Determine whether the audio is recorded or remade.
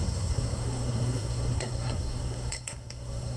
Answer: remade